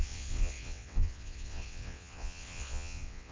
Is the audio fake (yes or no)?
yes